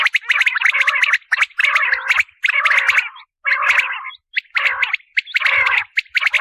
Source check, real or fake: real